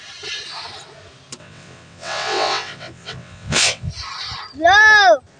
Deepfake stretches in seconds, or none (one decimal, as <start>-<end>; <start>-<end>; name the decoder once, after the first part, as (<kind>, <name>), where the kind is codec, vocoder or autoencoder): 1.4-3.9 (vocoder, WaveNeXt)

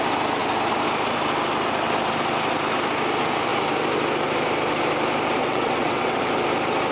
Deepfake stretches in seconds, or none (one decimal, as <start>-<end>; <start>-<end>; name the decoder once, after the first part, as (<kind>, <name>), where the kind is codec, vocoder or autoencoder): 5.4-6.2 (vocoder, WaveNeXt)

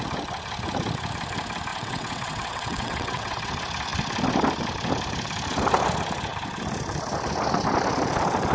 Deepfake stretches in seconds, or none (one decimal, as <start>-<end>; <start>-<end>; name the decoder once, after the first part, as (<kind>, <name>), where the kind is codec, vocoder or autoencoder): 1.7-3.5 (vocoder, WaveNeXt)

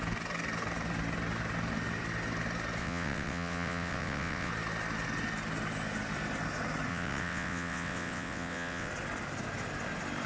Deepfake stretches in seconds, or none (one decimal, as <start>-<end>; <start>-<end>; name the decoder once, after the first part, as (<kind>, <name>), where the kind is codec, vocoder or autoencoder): 2.8-4.5 (vocoder, WaveNeXt); 6.9-8.9

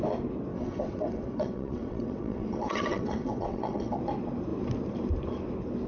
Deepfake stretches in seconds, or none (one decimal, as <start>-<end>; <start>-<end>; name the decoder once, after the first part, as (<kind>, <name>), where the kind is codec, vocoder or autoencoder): 0.5-4.0 (vocoder, WaveNeXt)

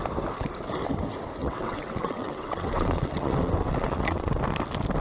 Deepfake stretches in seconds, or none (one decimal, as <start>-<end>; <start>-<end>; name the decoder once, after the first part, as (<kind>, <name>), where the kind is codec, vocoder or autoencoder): 1.4-4.4 (vocoder, WaveNeXt)

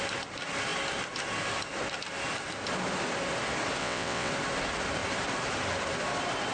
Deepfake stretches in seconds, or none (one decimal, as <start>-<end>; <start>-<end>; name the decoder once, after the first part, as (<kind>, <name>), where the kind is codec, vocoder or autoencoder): 3.8-4.3 (vocoder, WaveNeXt)